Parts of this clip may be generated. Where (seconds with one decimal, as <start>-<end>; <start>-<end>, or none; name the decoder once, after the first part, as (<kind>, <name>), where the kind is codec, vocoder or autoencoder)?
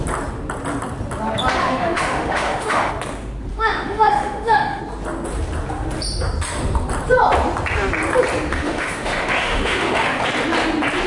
1.6-2.9 (autoencoder, DAC-VAE); 3.5-4.8; 8.5-10.2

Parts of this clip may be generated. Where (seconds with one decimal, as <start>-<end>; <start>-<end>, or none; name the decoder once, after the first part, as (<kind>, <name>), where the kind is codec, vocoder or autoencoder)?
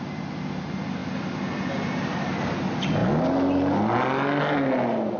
none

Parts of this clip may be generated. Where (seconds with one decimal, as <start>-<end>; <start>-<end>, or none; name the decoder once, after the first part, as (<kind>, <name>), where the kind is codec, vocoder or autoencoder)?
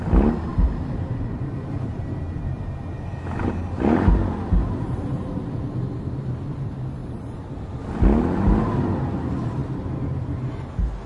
0.5-2.2 (vocoder, BigVGAN v2); 7.0-7.8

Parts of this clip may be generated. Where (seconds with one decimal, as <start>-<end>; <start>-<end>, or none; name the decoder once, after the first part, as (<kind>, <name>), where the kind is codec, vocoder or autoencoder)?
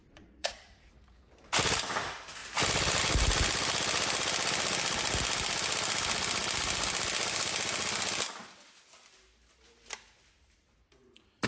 0.0-0.6 (vocoder, Vocos)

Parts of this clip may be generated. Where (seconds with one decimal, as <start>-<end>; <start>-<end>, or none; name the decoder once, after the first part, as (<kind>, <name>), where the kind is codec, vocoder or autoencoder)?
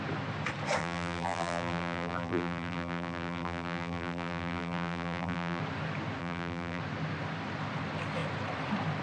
0.8-5.6 (vocoder, BigVGAN v2); 6.2-6.8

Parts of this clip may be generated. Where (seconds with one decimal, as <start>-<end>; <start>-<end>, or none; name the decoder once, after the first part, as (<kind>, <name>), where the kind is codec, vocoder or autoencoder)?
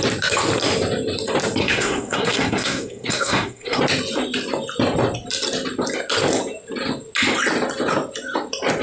1.6-3.8 (codec, SNAC)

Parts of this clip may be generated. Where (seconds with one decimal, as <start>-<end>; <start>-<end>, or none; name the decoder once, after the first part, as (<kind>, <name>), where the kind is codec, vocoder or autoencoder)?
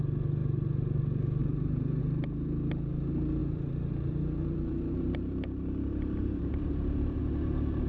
1.4-2.0 (vocoder, BigVGAN v2); 3.4-7.2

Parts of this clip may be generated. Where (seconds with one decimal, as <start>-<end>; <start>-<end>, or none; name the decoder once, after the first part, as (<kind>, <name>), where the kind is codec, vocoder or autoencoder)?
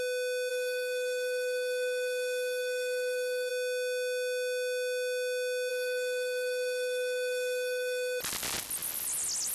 0.5-3.5 (codec, SNAC); 5.7-8.2